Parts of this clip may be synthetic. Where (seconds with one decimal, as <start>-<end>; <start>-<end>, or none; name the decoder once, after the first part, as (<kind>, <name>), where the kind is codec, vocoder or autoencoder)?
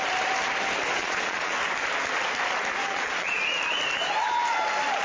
1.0-1.5 (vocoder, Vocos); 2.8-3.4